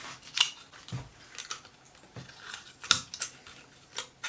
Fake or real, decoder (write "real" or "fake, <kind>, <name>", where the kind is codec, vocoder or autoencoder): real